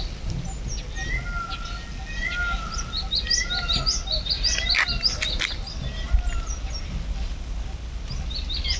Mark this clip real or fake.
real